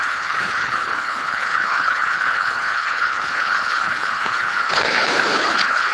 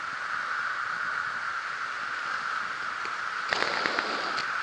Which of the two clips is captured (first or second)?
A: second